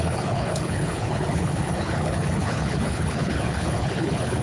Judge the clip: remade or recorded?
remade